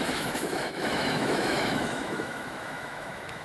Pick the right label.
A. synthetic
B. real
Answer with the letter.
A